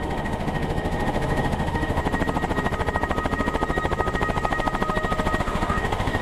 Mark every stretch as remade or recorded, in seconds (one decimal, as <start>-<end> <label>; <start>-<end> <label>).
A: 0.0-2.0 remade; 2.0-5.4 recorded; 5.4-6.2 remade